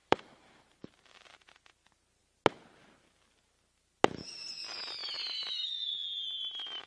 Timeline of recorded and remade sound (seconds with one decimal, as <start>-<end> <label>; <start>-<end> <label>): 0.0-0.9 remade; 0.9-6.9 recorded